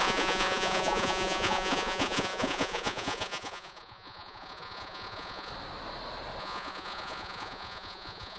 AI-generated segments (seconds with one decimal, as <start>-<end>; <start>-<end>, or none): 0.0-5.5; 6.4-8.4